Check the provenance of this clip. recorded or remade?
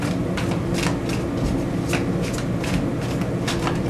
recorded